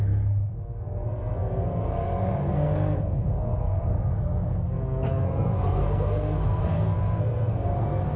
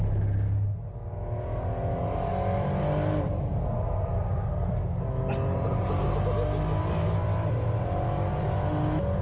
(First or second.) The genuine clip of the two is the second